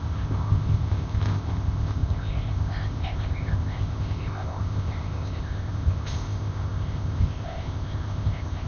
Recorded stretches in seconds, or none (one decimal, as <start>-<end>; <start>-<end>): none